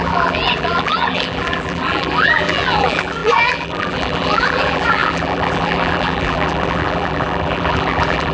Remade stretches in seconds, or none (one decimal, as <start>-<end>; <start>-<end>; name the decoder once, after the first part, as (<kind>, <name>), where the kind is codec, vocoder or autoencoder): 0.0-8.3 (vocoder, BigVGAN v2)